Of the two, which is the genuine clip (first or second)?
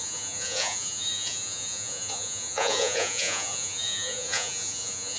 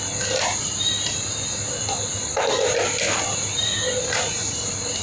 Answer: second